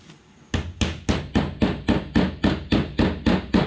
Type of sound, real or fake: real